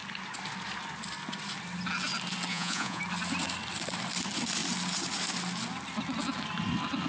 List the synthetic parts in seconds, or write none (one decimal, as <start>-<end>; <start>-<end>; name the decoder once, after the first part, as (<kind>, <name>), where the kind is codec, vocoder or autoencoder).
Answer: 2.5-3.0 (vocoder, Vocos)